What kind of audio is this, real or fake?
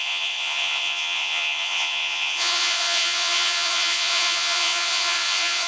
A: fake